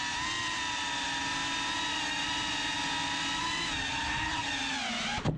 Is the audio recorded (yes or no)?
yes